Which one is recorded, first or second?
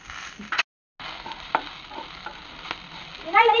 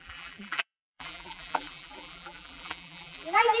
first